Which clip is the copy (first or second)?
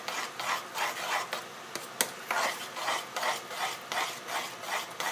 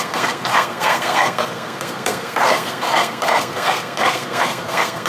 second